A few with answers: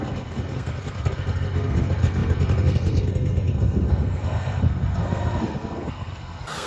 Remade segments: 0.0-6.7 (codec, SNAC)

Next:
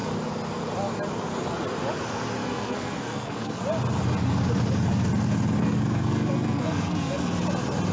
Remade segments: 2.4-3.6 (codec, SNAC); 5.6-7.4

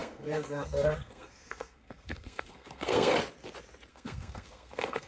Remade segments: 0.0-3.1 (codec, SNAC); 3.9-5.1

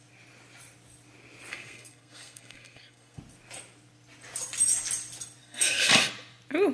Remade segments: 1.5-3.2 (codec, SNAC); 5.4-6.0

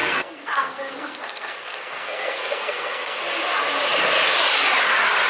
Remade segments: 0.0-3.2 (codec, SNAC)

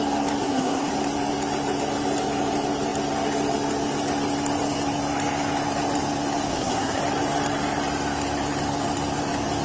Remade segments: 0.4-0.9 (codec, SNAC); 6.5-7.0

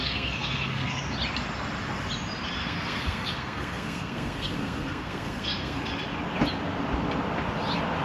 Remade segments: 0.0-1.0 (codec, SNAC); 2.6-5.9